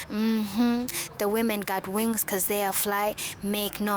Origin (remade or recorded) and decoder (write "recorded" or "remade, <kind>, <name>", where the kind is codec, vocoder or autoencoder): remade, autoencoder, DAC-VAE